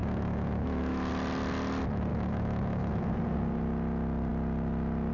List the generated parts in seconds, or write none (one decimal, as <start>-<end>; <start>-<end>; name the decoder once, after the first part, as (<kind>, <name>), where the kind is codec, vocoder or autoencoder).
0.0-1.1 (autoencoder, DAC-VAE); 2.1-3.1